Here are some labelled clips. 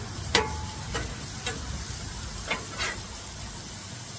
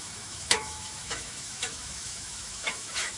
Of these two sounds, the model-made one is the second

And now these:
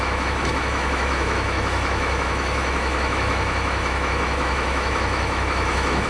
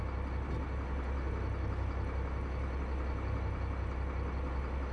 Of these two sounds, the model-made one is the first